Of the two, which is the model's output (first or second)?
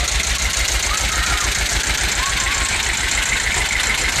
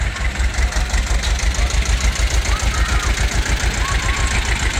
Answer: first